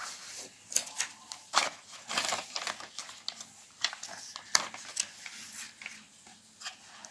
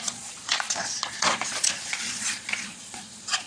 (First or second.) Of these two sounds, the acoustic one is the first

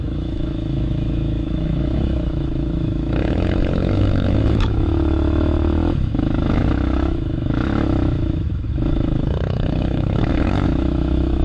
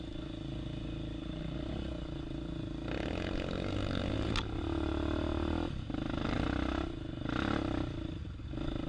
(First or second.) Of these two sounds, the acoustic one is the second